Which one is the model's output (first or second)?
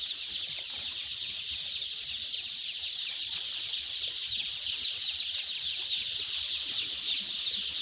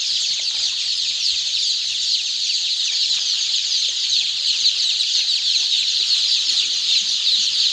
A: second